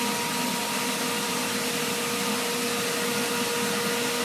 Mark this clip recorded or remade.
recorded